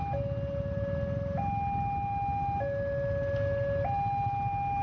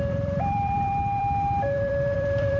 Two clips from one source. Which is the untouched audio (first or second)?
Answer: first